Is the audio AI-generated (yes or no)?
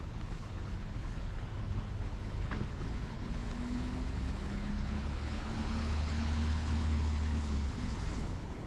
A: yes